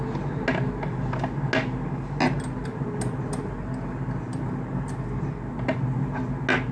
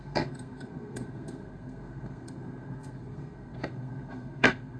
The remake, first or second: second